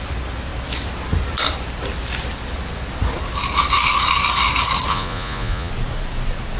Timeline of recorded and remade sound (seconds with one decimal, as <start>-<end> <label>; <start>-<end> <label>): 0.0-4.9 recorded; 4.9-5.7 remade; 5.7-6.6 recorded